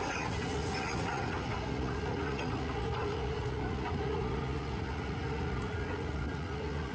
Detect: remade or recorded remade